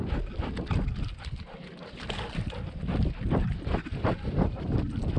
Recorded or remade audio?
recorded